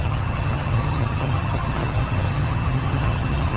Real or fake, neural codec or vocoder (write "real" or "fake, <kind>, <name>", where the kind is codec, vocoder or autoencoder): fake, vocoder, HiFi-GAN